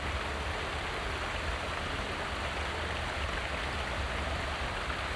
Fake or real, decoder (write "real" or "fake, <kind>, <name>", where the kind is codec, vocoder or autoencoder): real